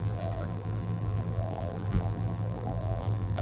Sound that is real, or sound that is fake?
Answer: fake